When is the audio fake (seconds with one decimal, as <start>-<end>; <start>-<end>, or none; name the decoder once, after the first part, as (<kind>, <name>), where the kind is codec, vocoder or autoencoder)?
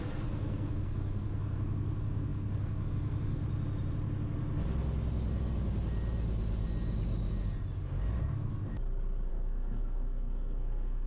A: 0.0-3.4 (codec, SNAC); 8.2-8.7; 9.3-11.1